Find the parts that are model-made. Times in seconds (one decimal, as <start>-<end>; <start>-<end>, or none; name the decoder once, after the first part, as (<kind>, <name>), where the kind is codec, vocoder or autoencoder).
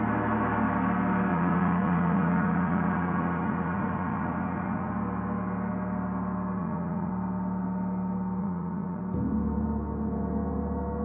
1.3-4.9 (vocoder, Vocos); 6.6-7.1; 8.4-9.0